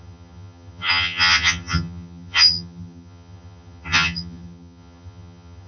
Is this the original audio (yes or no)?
no